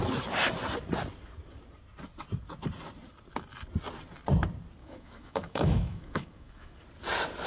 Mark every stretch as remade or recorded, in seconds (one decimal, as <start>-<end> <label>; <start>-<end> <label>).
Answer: 0.0-4.8 recorded; 4.8-6.7 remade; 6.7-7.5 recorded